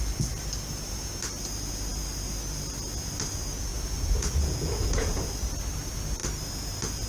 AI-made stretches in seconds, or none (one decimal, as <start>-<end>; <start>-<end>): 3.7-5.2